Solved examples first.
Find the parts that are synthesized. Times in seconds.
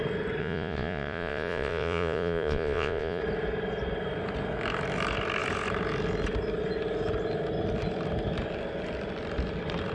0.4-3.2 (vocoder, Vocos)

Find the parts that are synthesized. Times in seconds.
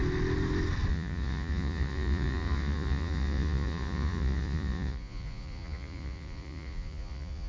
0.9-7.5 (vocoder, Vocos)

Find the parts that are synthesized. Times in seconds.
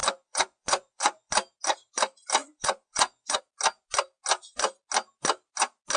0.0-1.3 (vocoder, Vocos); 2.4-3.4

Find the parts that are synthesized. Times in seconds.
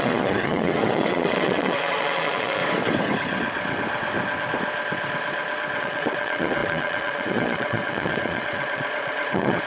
0.0-2.6 (vocoder, Vocos); 5.8-9.7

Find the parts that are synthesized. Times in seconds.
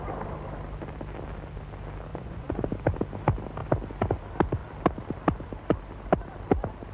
2.1-2.7 (vocoder, Vocos)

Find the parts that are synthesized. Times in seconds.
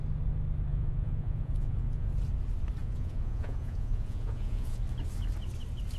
0.7-2.1 (vocoder, Vocos); 2.8-4.8